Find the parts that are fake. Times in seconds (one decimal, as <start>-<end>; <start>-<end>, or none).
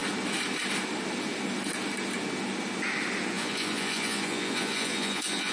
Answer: 3.3-5.5